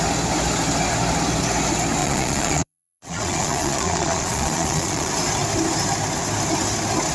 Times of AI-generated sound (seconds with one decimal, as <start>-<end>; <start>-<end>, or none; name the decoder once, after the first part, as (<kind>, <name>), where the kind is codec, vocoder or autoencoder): 2.0-5.1 (vocoder, Vocos)